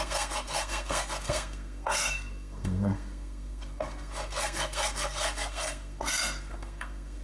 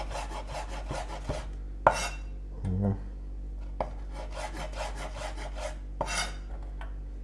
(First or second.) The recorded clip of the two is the second